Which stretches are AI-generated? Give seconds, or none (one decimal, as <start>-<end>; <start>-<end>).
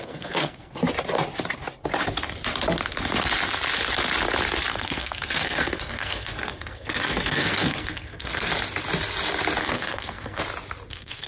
0.0-0.8; 4.7-8.5; 9.6-10.4; 10.9-11.3